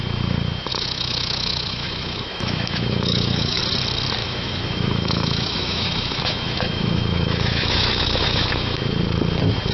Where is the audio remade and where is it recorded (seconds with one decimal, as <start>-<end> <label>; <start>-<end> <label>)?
0.0-0.7 recorded; 0.7-3.6 remade; 3.6-4.2 recorded; 4.2-8.8 remade; 8.8-9.7 recorded